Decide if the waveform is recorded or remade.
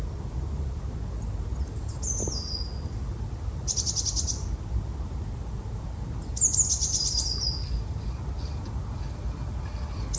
recorded